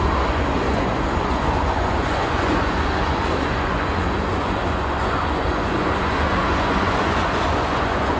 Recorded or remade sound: remade